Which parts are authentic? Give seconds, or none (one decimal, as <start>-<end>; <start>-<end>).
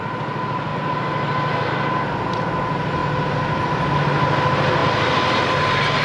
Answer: 0.0-0.7; 1.7-4.8; 5.6-6.0